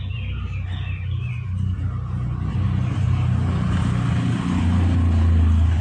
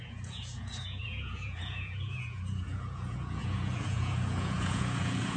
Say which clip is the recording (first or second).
first